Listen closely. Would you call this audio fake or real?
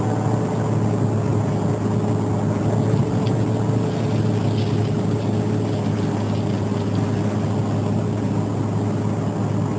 real